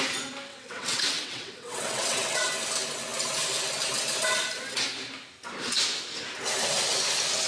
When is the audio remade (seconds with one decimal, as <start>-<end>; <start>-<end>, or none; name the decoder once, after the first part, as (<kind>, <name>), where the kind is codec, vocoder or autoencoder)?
0.5-2.5 (vocoder, WaveNeXt)